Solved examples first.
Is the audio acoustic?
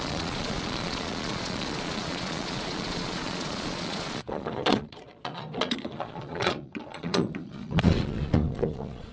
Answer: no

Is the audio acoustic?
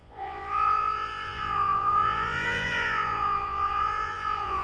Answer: no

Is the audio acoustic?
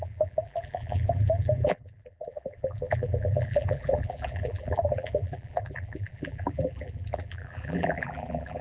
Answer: no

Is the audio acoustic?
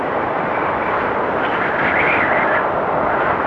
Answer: yes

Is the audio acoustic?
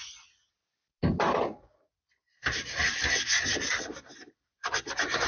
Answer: yes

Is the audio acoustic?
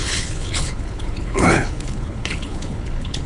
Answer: no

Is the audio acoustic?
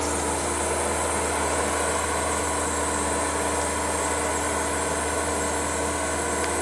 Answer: yes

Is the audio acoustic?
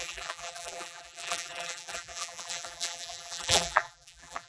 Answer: no